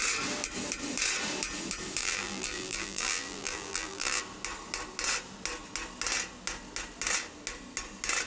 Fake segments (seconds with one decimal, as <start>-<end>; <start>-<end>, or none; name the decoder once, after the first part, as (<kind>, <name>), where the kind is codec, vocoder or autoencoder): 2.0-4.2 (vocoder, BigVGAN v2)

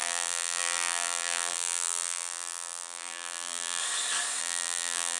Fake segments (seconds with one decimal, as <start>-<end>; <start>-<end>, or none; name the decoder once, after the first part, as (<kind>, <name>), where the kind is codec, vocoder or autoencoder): 0.0-3.8 (vocoder, BigVGAN v2); 4.4-5.2

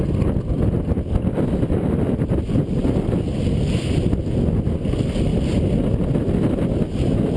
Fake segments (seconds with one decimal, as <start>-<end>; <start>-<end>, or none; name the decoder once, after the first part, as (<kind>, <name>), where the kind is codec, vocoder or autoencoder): none

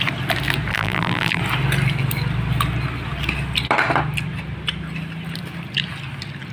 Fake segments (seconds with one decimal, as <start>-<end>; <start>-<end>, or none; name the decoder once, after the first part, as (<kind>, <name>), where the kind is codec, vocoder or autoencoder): 0.7-1.4 (vocoder, BigVGAN v2)

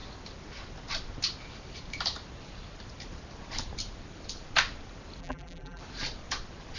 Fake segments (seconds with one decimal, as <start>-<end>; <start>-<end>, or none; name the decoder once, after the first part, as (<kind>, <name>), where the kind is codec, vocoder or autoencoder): 5.2-5.8 (vocoder, BigVGAN v2)

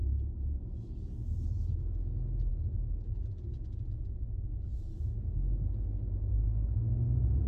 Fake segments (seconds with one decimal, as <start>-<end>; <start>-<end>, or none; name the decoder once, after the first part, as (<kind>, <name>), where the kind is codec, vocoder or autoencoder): 0.0-0.6 (vocoder, BigVGAN v2)